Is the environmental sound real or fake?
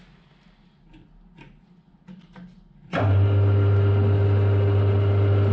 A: real